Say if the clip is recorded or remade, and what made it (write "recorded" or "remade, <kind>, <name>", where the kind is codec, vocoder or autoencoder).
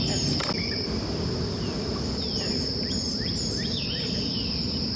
recorded